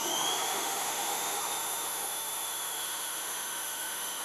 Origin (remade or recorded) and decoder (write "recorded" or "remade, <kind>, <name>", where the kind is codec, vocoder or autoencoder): remade, autoencoder, DAC-VAE